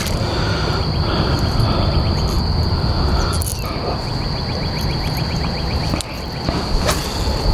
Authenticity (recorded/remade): recorded